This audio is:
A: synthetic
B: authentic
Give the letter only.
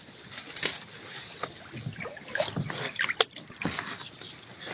B